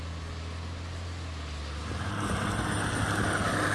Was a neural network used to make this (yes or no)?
no